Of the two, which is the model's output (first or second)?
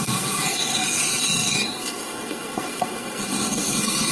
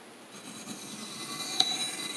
first